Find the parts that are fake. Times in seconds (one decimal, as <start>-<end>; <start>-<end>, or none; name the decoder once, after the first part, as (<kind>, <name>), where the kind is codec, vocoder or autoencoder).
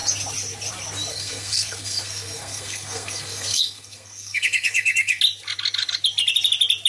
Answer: 1.1-5.2 (codec, SNAC)